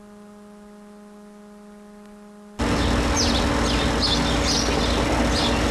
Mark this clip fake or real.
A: real